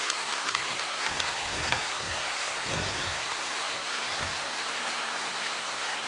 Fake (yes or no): yes